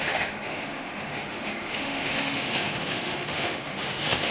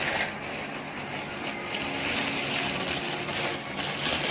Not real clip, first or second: first